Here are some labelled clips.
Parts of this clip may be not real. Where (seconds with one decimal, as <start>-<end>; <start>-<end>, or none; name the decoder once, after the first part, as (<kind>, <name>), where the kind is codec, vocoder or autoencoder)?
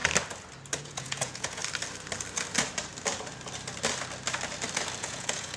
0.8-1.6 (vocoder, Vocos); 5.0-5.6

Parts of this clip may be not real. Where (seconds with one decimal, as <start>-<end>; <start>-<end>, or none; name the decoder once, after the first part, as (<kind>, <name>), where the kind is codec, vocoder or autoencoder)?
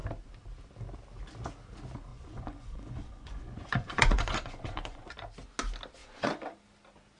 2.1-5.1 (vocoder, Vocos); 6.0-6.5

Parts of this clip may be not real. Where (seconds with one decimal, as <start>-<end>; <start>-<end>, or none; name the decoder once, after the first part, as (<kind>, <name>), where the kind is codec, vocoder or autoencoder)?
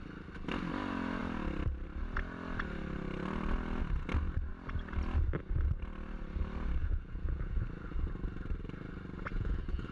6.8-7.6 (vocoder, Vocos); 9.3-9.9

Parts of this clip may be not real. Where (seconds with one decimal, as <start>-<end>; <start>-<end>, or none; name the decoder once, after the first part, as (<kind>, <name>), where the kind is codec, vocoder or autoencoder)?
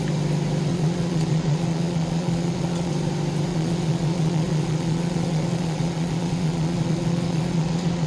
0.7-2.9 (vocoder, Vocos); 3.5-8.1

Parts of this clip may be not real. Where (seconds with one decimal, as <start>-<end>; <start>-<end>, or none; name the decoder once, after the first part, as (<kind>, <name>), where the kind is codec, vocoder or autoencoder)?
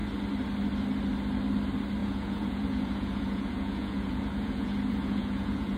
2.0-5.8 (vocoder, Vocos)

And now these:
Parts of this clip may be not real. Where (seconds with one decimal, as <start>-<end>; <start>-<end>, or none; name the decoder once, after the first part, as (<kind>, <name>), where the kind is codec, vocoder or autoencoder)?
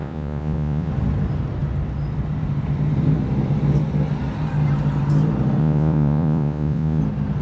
0.0-0.9 (vocoder, Vocos); 5.6-7.0